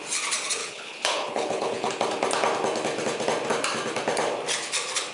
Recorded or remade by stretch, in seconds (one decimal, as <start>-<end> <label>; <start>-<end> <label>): 0.0-0.6 recorded; 0.6-1.9 remade; 1.9-5.1 recorded